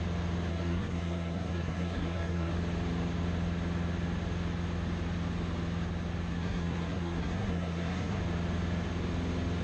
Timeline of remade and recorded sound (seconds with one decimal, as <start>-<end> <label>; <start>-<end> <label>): 0.0-0.5 recorded; 0.5-2.5 remade; 2.5-6.3 recorded; 6.3-8.2 remade; 8.2-9.6 recorded

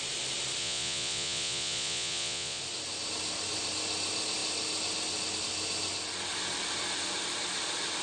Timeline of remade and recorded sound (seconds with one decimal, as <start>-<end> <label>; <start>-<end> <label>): 0.0-0.6 recorded; 0.6-2.6 remade; 2.6-8.0 recorded

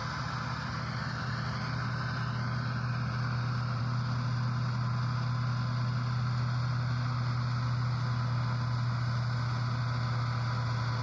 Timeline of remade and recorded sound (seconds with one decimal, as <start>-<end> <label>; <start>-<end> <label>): 0.0-11.0 recorded

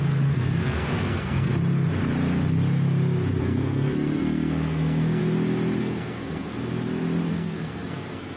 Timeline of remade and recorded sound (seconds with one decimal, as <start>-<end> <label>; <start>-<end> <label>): 0.0-1.5 remade; 1.5-3.4 recorded; 3.4-5.2 remade; 5.2-5.8 recorded; 5.8-6.5 remade; 6.5-7.3 recorded; 7.3-8.4 remade

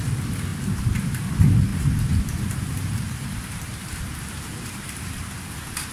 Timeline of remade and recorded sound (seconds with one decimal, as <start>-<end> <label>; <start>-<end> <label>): 0.0-0.5 recorded; 0.5-1.2 remade; 1.2-1.7 recorded; 1.7-5.2 remade; 5.2-5.9 recorded

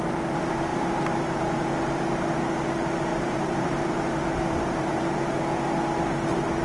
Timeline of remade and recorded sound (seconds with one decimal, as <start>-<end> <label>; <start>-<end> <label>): 0.0-0.7 recorded; 0.7-1.8 remade; 1.8-3.1 recorded; 3.1-5.4 remade; 5.4-6.6 recorded

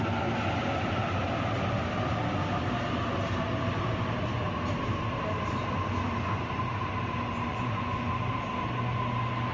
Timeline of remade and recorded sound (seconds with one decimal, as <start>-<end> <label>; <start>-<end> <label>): 0.0-7.5 recorded; 7.5-8.1 remade; 8.1-9.5 recorded